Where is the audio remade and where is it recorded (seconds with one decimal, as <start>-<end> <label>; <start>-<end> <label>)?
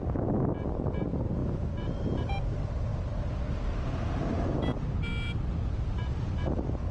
0.0-6.9 recorded